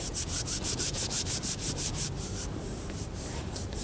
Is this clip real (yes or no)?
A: no